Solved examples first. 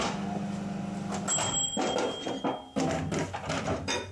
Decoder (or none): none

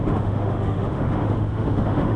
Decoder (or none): autoencoder, DAC-VAE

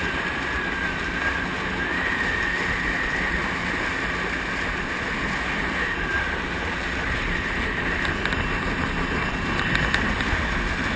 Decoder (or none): none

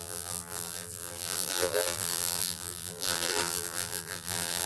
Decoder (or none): vocoder, BigVGAN v2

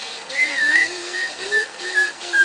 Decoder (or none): codec, SNAC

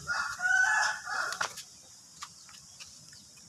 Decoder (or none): none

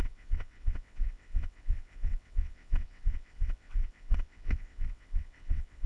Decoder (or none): vocoder, WaveNeXt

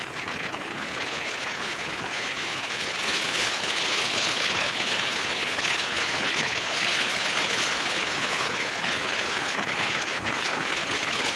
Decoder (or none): codec, HILCodec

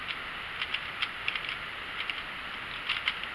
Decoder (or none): none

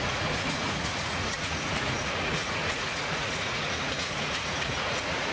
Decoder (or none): vocoder, Vocos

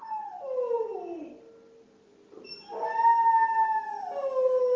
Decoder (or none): none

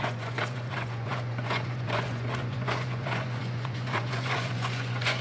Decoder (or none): vocoder, Vocos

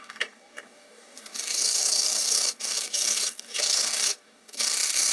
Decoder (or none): codec, DAC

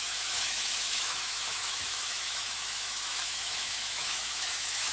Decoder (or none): autoencoder, DAC-VAE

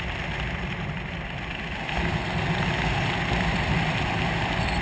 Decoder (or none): none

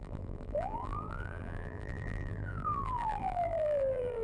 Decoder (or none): vocoder, BigVGAN v2